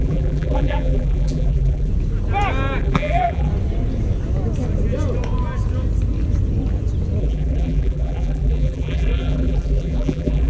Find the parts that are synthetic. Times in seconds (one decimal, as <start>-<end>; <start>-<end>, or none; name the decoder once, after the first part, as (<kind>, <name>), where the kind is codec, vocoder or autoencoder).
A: 0.0-1.9 (vocoder, BigVGAN v2); 2.8-3.5; 7.2-10.5